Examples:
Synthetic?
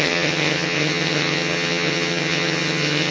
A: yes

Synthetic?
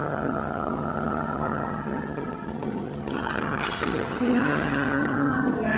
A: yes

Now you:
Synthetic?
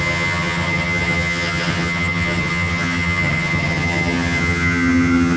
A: yes